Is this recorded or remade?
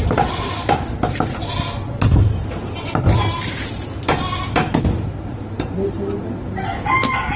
recorded